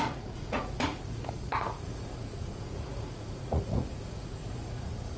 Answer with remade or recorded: remade